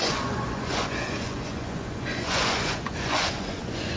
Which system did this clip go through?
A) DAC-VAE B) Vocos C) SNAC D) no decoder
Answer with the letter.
B